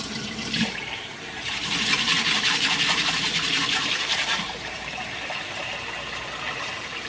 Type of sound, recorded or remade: remade